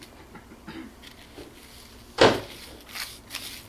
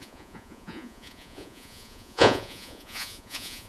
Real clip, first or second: first